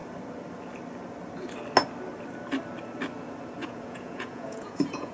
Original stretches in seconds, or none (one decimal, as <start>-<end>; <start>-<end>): 0.0-3.6